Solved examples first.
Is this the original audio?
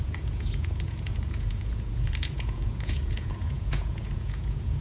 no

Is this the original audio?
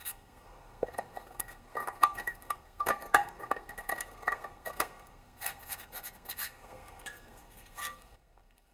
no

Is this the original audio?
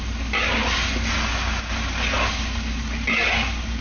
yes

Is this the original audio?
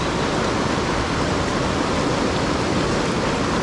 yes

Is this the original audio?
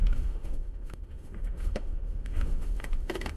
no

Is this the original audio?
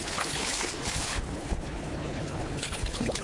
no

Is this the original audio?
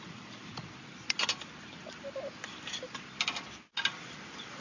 yes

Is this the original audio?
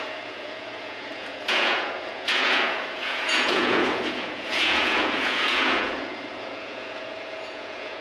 no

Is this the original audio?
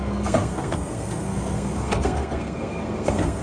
no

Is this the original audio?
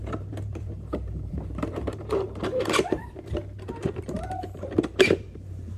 no